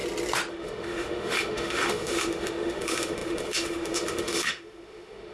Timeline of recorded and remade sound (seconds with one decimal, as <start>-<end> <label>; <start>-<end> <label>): 0.0-0.5 recorded; 0.5-5.3 remade